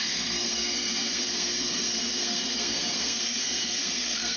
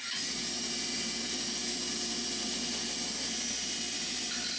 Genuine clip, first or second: second